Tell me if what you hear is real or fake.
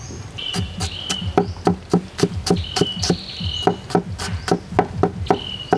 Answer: real